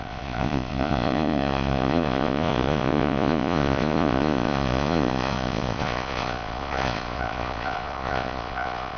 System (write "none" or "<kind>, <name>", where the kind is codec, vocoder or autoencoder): vocoder, Vocos